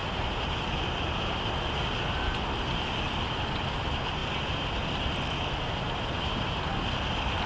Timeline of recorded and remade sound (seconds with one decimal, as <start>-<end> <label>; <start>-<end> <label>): 0.0-7.5 recorded